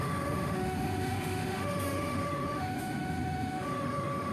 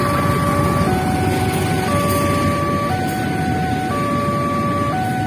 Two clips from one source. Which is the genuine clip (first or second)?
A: second